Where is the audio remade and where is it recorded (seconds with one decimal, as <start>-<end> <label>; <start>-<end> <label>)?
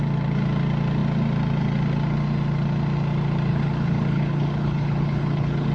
0.0-3.5 recorded; 3.5-5.7 remade